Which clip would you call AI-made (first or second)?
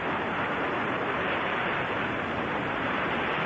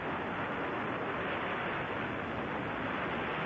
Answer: first